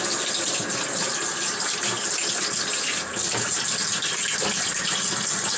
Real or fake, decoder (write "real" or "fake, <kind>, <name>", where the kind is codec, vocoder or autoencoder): real